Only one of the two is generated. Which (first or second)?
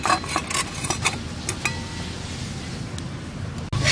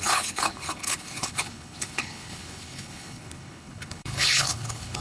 second